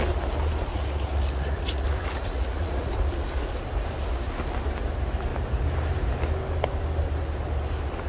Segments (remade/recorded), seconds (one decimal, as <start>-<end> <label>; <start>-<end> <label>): 0.0-0.7 recorded; 0.7-2.9 remade; 2.9-8.1 recorded